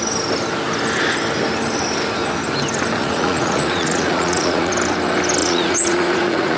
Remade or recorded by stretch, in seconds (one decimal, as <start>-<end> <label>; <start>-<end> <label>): 0.0-3.0 recorded; 3.0-4.7 remade; 4.7-5.4 recorded; 5.4-6.6 remade